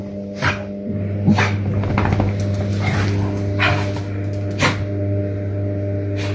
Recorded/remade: recorded